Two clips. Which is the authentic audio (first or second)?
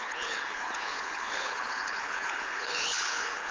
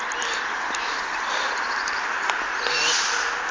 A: second